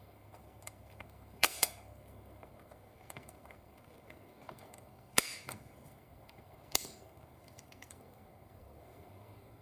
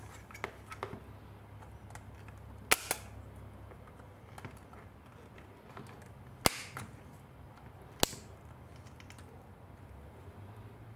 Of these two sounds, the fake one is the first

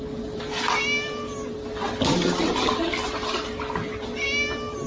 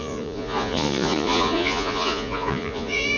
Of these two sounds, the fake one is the second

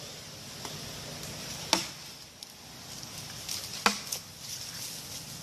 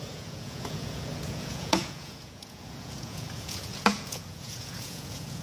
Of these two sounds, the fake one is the second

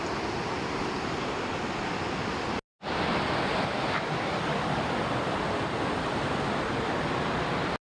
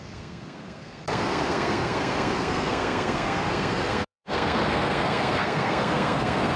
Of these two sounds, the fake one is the second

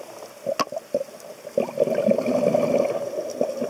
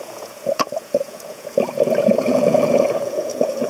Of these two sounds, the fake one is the second